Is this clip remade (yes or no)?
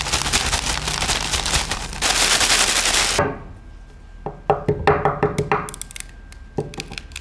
no